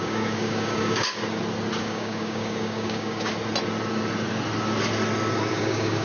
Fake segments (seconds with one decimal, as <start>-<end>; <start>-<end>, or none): 0.0-1.2; 1.8-3.3; 5.5-6.0